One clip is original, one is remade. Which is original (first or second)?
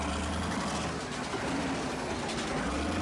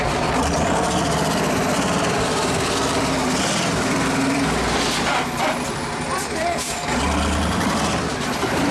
first